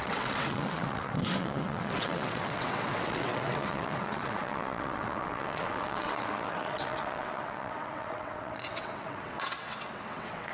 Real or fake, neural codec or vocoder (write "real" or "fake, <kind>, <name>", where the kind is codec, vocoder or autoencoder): fake, vocoder, WaveNeXt